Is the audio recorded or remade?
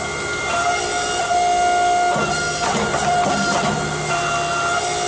recorded